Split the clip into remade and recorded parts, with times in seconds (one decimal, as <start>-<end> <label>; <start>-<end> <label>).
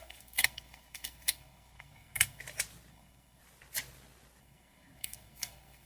0.0-2.4 remade; 2.4-2.9 recorded; 2.9-3.4 remade; 3.4-4.4 recorded; 4.4-5.9 remade